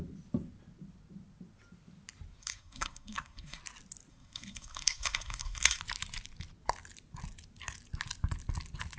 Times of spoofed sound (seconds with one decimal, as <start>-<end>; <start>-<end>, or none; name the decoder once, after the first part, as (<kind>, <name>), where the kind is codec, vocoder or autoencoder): 2.4-3.6 (codec, SNAC); 4.1-5.8